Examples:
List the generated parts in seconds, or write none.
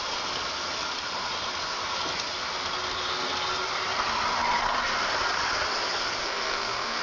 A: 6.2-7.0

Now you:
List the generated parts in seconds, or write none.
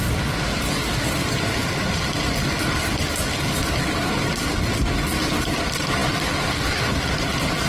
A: none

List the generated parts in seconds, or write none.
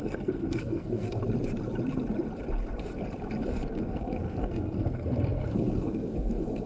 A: 0.0-1.2; 3.7-6.7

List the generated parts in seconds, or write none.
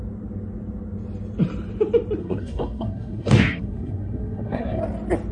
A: 2.2-4.8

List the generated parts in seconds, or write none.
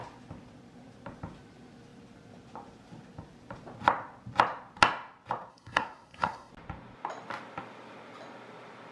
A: 5.5-6.5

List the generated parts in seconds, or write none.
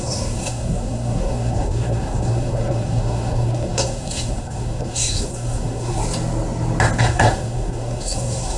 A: 0.0-6.0; 7.0-8.6